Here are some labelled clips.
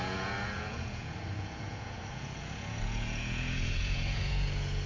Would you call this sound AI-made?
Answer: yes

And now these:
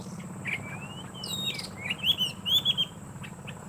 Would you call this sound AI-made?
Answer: no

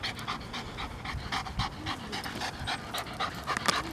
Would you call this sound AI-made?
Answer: no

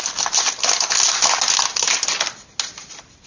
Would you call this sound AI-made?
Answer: no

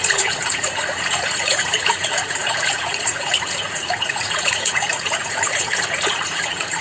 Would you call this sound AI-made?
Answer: yes